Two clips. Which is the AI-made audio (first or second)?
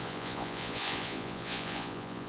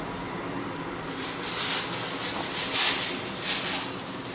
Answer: first